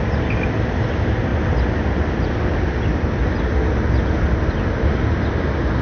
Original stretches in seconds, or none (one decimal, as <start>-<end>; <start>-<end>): 0.0-5.8